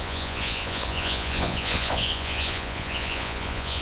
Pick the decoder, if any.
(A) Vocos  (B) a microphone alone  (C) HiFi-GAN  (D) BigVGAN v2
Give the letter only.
A